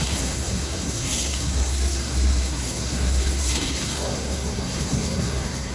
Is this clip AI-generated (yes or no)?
yes